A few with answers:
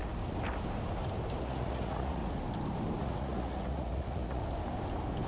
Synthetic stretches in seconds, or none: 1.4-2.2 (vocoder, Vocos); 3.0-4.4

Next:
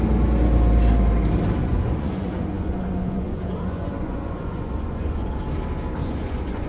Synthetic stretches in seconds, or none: 1.6-5.4 (vocoder, Vocos); 6.0-6.7

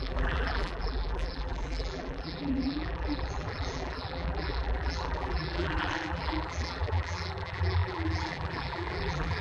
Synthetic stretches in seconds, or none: 0.0-9.4 (vocoder, BigVGAN v2)

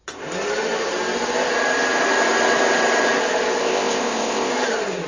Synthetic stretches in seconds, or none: 3.6-4.5 (codec, ZipCodec)

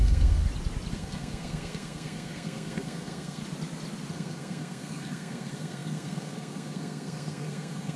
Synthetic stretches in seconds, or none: 0.0-0.4 (codec, SNAC); 0.9-3.4; 4.1-8.0